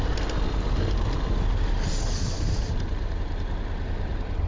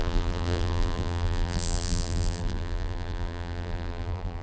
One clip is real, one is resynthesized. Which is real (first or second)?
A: first